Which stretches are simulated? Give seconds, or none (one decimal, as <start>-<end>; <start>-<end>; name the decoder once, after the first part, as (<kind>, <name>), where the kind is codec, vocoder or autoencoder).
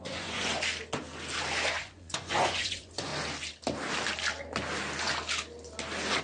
0.0-0.5 (vocoder, Vocos); 1.8-3.1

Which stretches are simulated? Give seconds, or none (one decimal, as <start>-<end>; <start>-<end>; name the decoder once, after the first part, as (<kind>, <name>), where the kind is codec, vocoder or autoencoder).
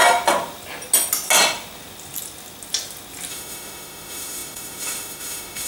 3.3-5.7 (autoencoder, DAC-VAE)